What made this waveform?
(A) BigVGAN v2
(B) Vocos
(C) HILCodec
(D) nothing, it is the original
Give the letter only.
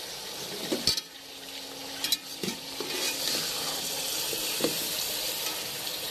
D